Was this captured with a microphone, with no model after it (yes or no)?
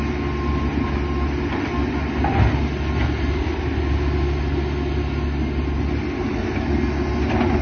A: yes